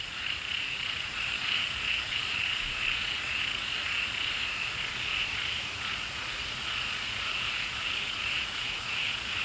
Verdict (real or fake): fake